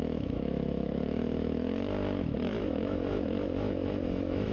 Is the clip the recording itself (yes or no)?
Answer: no